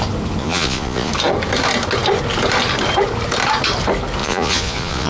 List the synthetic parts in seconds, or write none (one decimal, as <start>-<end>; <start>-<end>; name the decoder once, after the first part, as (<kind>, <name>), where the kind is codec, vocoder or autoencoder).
0.4-1.1 (vocoder, Vocos); 4.2-5.1